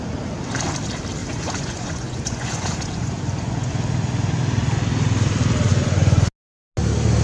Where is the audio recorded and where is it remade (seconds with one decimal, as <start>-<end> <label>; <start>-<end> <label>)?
0.0-1.2 recorded; 1.2-3.7 remade; 3.7-5.7 recorded; 5.7-6.3 remade; 6.3-7.2 recorded